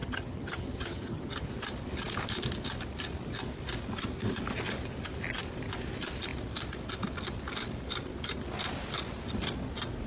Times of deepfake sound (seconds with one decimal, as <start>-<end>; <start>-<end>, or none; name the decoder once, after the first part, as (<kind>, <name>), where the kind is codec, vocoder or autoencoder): 0.0-1.5 (vocoder, HiFi-GAN)